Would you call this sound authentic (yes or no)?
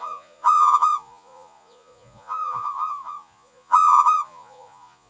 no